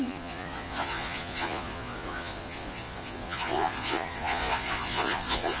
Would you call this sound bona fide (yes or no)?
no